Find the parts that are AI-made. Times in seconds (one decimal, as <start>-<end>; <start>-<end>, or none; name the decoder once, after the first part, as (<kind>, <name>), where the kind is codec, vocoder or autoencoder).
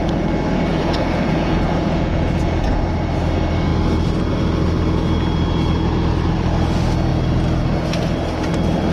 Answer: 0.7-2.9 (vocoder, Vocos)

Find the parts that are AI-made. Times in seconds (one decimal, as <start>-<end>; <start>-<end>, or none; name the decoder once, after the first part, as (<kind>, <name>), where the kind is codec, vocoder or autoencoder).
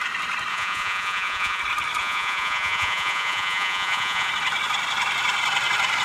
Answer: 0.5-1.6 (vocoder, Vocos); 2.0-4.3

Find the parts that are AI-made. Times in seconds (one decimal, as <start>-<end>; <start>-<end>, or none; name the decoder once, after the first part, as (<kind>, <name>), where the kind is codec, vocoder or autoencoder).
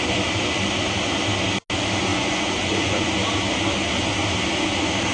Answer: 2.1-3.1 (vocoder, Vocos)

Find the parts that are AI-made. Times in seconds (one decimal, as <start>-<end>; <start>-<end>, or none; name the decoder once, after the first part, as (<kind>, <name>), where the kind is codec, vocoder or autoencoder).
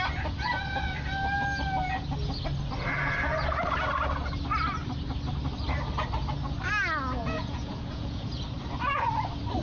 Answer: 7.2-8.3 (vocoder, Vocos)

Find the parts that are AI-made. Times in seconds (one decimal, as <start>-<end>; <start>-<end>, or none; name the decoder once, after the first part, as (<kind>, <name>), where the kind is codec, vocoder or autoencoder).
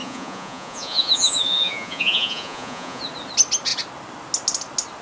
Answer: 0.0-3.0 (vocoder, Vocos)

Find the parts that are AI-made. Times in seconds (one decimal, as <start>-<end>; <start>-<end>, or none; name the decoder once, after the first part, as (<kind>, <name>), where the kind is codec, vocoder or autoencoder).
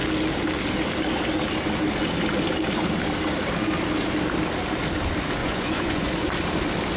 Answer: 5.4-6.1 (vocoder, Vocos)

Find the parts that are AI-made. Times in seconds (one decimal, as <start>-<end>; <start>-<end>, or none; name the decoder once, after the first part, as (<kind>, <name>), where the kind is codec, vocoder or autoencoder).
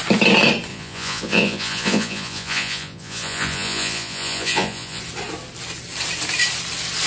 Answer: 0.7-5.0 (vocoder, Vocos)